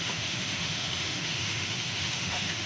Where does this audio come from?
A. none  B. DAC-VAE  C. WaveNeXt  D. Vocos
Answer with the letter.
B